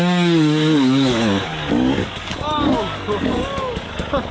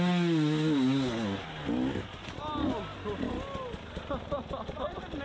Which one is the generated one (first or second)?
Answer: first